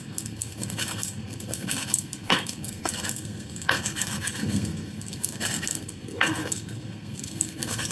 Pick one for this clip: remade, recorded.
remade